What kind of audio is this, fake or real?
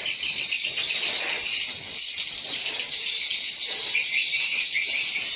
real